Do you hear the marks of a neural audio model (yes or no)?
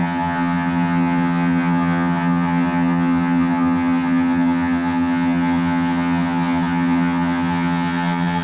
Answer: yes